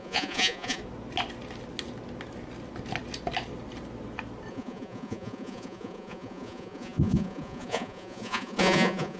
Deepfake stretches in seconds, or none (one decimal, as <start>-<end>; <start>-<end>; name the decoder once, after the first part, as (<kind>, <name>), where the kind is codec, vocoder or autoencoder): 0.0-0.8 (vocoder, Vocos); 4.5-9.2